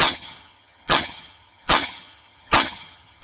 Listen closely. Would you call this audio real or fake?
fake